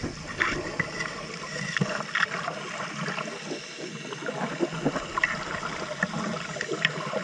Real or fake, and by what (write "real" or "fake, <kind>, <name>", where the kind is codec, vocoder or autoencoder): real